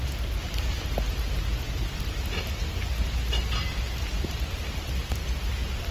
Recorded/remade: recorded